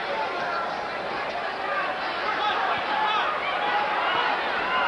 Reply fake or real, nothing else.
real